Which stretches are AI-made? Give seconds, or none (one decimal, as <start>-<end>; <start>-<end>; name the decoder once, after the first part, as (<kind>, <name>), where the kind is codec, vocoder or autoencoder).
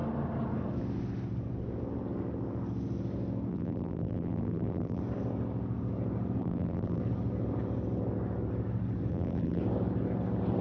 3.5-5.0 (vocoder, BigVGAN v2); 6.4-7.0; 9.1-9.6